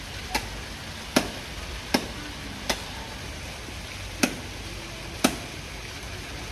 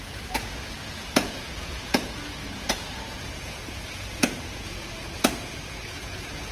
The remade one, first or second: second